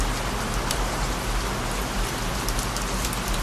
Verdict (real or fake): real